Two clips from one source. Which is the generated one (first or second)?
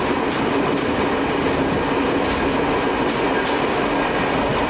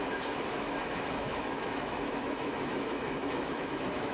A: second